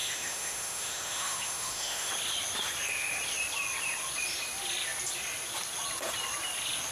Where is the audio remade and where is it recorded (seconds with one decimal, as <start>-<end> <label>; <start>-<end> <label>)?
0.0-2.1 remade; 2.1-6.9 recorded